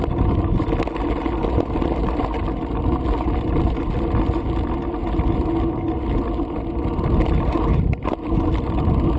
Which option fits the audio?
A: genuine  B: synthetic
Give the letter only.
A